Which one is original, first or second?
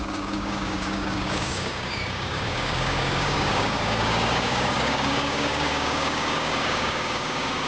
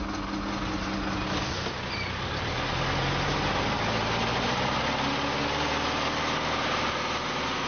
second